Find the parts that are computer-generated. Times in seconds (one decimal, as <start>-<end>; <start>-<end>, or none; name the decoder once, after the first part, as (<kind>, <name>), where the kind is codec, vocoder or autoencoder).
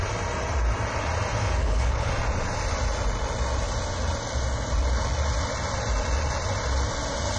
1.6-2.1 (codec, HILCodec)